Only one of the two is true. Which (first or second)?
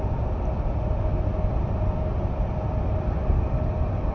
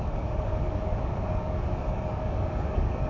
first